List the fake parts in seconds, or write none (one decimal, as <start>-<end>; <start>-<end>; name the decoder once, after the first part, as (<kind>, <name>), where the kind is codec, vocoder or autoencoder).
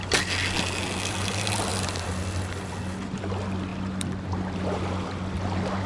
none